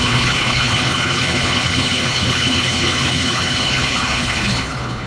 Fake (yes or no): yes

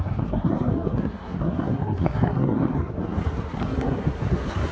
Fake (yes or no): yes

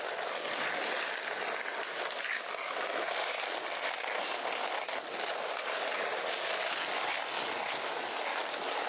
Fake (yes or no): no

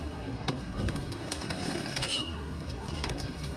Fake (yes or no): yes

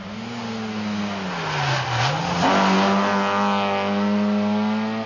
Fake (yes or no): no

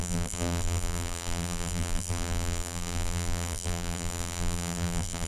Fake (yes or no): yes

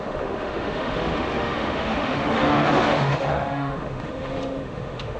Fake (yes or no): yes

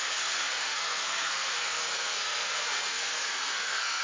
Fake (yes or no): yes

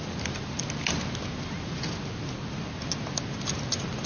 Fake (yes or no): no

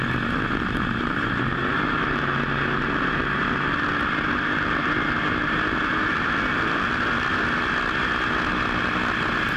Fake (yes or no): no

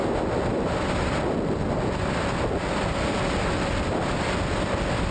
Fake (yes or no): no